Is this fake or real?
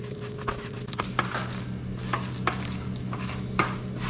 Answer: real